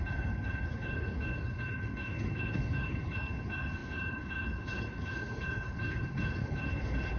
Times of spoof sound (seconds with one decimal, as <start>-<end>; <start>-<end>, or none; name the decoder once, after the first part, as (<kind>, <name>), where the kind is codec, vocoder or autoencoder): 0.0-7.2 (codec, HILCodec)